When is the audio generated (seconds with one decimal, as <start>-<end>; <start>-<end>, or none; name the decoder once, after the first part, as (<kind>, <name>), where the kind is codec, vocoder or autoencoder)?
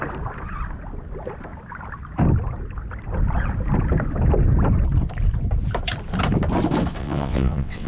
7.0-7.9 (vocoder, WaveNeXt)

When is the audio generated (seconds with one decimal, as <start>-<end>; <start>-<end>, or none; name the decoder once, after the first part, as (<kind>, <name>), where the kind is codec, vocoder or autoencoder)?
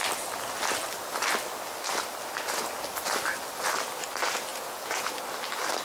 4.5-5.1 (vocoder, Vocos)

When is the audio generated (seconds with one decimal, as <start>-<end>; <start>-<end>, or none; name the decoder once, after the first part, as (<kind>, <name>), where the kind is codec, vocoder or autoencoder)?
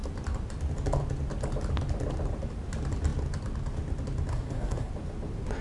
4.3-4.9 (codec, SNAC)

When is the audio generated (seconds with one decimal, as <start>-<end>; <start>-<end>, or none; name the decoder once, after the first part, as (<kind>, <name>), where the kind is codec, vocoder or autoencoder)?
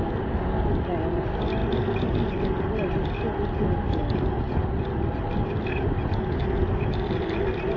none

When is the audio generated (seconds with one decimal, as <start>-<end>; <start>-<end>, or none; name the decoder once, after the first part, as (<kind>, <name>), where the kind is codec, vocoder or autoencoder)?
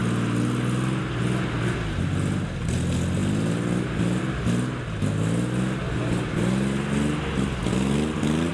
none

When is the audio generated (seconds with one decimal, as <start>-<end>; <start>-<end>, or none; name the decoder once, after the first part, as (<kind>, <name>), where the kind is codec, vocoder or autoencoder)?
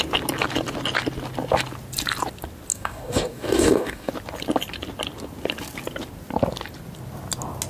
2.7-4.1 (codec, DAC)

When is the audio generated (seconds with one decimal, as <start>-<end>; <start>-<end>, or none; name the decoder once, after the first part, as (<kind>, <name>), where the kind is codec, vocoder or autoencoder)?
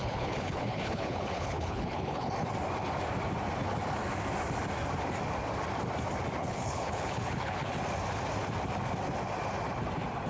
0.0-2.3 (codec, HILCodec); 6.4-7.7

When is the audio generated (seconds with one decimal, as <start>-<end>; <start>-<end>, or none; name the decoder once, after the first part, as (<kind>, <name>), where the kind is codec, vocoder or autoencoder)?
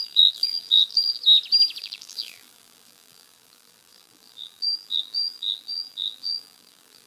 0.0-1.2 (vocoder, BigVGAN v2); 1.8-7.1